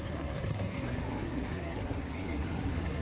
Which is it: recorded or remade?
remade